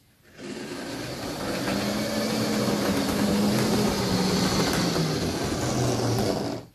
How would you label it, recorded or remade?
recorded